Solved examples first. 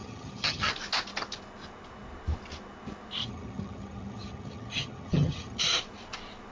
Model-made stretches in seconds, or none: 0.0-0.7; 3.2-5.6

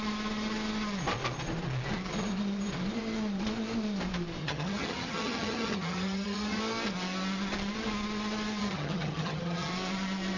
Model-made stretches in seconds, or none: 4.4-6.6; 8.6-9.7

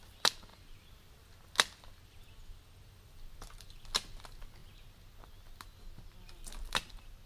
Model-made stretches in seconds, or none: none